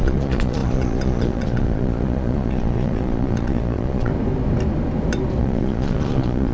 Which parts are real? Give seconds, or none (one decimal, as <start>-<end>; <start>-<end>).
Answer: 4.1-5.4